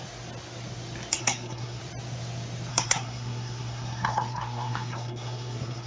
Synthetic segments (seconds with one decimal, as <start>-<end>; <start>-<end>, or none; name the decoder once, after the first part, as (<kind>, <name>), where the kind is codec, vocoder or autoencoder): 1.2-1.8 (codec, SNAC); 2.7-5.9